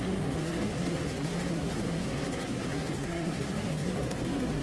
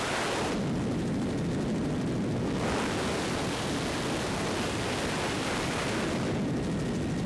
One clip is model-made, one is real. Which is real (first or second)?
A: second